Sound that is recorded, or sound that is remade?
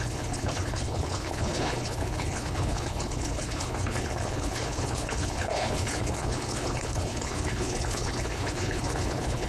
remade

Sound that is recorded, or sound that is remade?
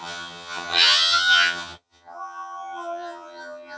remade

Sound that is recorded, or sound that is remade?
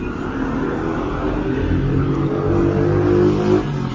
recorded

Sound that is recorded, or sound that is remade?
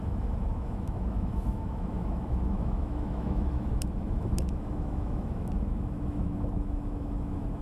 remade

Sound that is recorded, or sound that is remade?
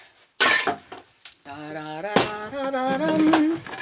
recorded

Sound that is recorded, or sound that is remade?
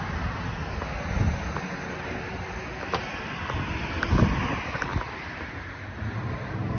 recorded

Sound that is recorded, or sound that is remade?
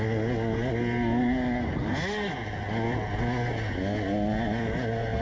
recorded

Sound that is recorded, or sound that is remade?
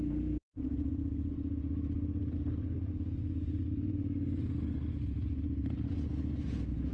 recorded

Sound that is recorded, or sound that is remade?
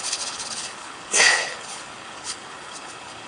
remade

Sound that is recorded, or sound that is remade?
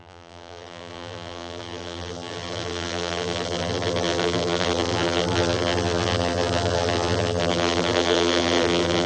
remade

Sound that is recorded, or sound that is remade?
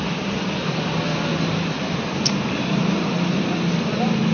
recorded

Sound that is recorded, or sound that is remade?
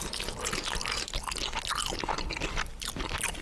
recorded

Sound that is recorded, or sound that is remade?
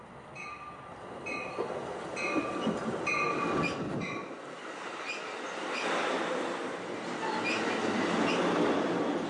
recorded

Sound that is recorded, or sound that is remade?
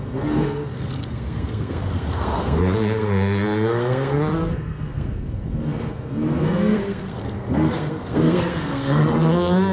remade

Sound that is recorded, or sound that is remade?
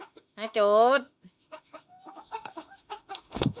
remade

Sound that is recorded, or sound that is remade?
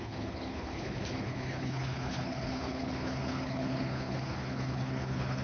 remade